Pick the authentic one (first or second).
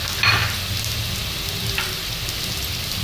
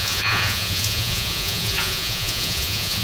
first